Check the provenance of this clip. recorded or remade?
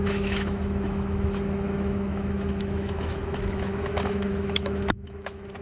remade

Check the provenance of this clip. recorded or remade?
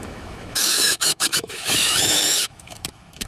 remade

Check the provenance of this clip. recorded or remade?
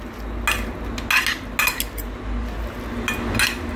recorded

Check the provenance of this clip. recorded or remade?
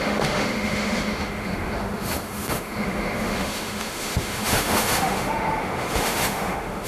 remade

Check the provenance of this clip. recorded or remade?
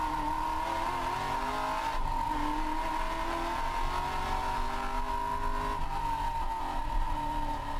recorded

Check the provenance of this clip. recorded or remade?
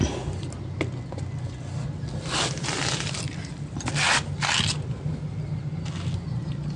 recorded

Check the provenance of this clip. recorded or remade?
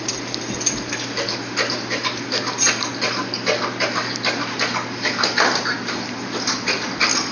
recorded